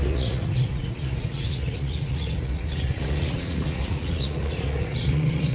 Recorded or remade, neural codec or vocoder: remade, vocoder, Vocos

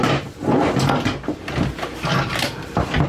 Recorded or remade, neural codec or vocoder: recorded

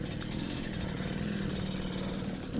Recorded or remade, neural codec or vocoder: recorded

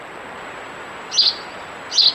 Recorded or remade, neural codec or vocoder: recorded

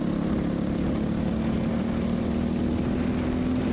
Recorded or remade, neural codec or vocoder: recorded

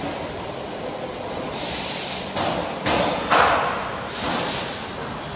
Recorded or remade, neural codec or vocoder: recorded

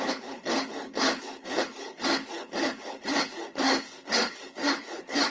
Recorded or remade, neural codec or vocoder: remade, codec, HILCodec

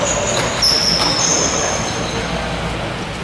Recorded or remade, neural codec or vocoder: recorded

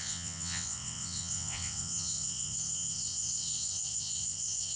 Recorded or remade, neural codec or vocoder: remade, vocoder, WaveNeXt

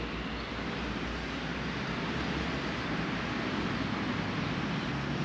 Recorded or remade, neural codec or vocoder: recorded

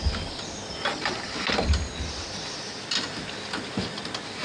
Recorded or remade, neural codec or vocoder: recorded